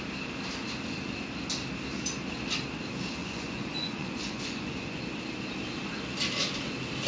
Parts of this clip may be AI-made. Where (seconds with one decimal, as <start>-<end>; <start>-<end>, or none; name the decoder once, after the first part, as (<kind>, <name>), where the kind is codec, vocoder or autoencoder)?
3.2-5.0 (vocoder, Vocos)